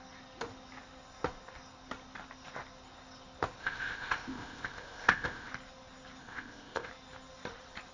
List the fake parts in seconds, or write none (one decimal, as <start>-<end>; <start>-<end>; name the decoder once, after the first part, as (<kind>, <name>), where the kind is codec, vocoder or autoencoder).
3.6-5.5 (codec, ZipCodec); 6.2-6.9